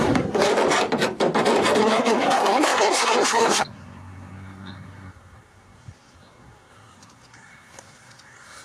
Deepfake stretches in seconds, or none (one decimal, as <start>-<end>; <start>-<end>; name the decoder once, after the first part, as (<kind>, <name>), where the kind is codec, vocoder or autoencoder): 0.0-0.5 (codec, SNAC); 1.8-8.6